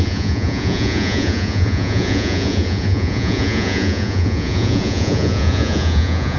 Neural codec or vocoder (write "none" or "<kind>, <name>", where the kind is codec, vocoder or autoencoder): vocoder, Vocos